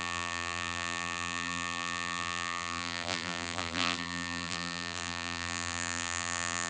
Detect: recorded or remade remade